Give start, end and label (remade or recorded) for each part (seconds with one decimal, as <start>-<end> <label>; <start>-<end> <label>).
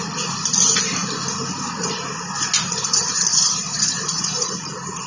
0.0-3.3 recorded; 3.3-4.5 remade; 4.5-5.1 recorded